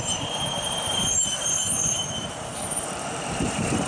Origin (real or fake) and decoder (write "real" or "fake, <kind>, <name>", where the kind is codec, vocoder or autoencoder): fake, vocoder, BigVGAN v2